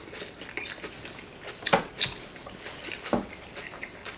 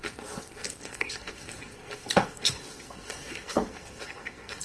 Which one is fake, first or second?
second